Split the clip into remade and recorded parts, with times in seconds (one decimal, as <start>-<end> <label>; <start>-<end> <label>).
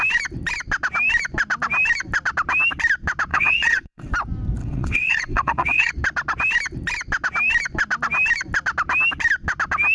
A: 0.0-3.3 recorded; 3.3-4.1 remade; 4.1-4.6 recorded; 4.6-5.9 remade; 5.9-9.9 recorded